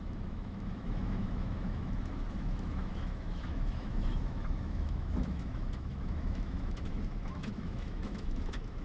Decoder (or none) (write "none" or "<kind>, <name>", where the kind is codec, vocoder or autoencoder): autoencoder, DAC-VAE